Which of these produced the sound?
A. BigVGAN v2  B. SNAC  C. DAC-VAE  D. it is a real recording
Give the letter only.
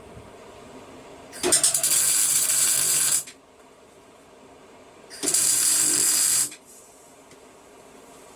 A